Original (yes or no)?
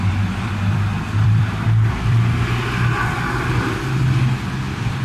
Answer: no